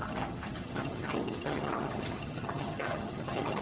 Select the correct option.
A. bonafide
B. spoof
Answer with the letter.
B